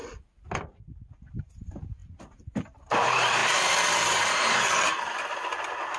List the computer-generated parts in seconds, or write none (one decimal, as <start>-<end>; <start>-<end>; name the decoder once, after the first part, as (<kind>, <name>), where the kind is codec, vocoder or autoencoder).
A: 0.8-6.0 (vocoder, BigVGAN v2)